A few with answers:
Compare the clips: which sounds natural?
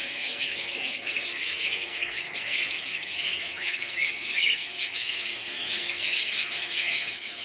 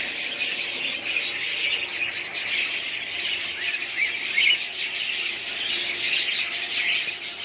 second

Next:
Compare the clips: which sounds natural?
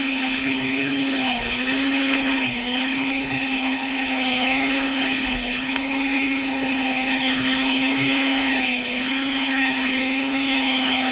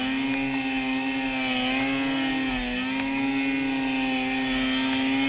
second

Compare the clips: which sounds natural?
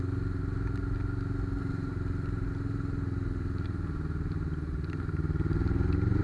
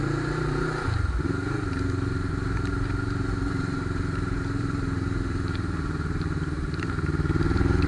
first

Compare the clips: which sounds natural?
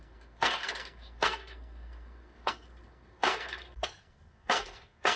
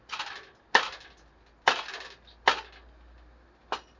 second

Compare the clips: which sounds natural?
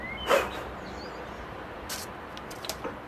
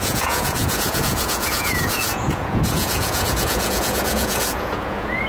first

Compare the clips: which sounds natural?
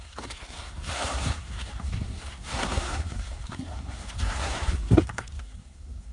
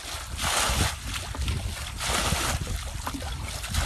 second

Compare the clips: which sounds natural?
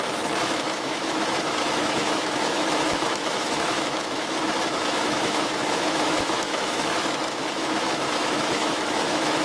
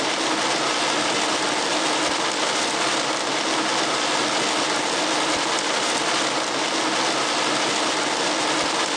second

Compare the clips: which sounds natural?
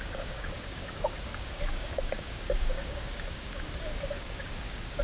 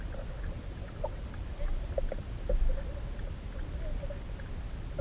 second